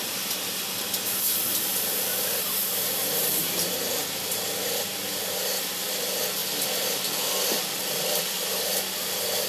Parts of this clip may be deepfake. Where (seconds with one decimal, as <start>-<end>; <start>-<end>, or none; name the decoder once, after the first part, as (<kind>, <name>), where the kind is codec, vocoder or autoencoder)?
0.0-4.0 (vocoder, BigVGAN v2); 5.1-6.4; 7.7-9.5